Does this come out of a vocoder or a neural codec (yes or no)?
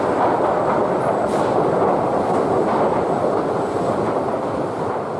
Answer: no